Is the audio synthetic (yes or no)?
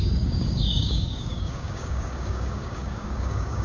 yes